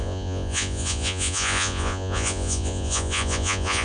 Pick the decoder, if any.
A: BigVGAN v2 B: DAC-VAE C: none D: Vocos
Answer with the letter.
D